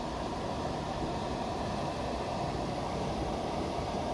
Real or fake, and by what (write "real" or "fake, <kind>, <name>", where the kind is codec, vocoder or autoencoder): fake, vocoder, BigVGAN v2